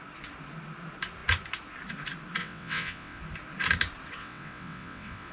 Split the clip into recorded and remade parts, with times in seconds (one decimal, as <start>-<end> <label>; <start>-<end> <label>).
0.0-2.4 recorded; 2.4-3.2 remade; 3.2-4.2 recorded; 4.2-5.3 remade